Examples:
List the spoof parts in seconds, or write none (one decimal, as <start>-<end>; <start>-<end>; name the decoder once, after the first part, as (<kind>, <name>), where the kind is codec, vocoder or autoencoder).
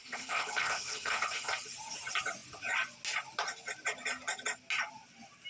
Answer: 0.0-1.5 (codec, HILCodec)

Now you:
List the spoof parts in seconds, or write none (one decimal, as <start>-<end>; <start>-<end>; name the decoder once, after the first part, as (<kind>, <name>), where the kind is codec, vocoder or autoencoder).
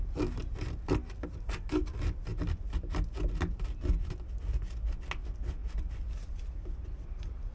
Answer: none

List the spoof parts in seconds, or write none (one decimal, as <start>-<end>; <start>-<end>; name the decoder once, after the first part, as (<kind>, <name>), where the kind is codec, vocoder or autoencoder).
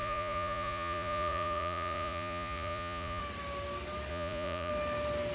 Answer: 0.0-3.2 (vocoder, Vocos); 4.1-4.7